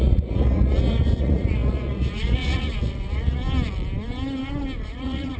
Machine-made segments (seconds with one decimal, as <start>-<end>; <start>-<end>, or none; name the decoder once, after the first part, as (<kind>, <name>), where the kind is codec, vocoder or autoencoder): 0.0-3.4 (vocoder, Vocos); 4.9-5.4